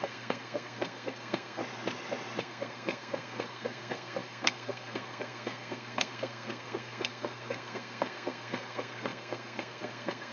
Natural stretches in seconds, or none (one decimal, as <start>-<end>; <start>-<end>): 1.6-2.4